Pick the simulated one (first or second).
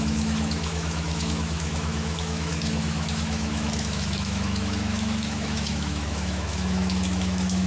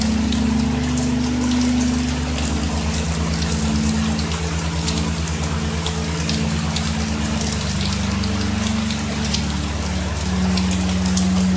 first